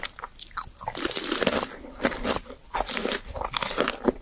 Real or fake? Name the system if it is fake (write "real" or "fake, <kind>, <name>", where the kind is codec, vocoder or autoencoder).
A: fake, vocoder, BigVGAN v2